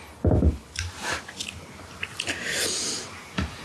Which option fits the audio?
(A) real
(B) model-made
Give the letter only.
B